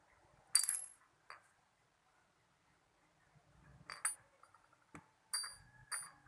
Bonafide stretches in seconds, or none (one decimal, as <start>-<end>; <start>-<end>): 0.0-6.3